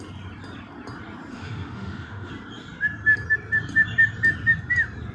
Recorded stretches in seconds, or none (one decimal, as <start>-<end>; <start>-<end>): 0.0-1.3; 2.3-5.1